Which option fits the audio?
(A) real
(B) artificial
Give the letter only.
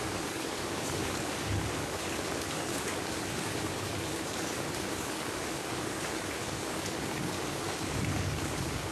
B